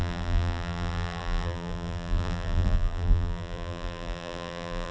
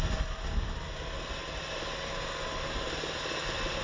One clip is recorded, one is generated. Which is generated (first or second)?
first